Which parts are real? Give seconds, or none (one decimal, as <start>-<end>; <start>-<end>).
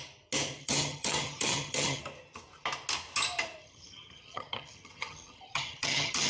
0.0-0.6; 2.0-3.6